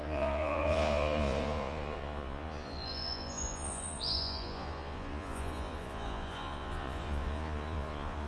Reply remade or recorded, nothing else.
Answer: remade